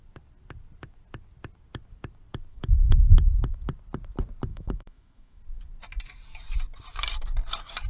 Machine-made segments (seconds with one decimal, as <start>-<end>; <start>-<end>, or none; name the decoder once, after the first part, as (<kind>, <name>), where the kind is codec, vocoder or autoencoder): 2.5-3.0 (autoencoder, DAC-VAE); 4.5-5.4